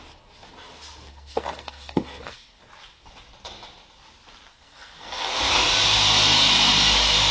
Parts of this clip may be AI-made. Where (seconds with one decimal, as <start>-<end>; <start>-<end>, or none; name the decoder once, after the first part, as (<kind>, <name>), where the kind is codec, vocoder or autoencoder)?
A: 1.1-2.6 (codec, SNAC); 4.5-5.4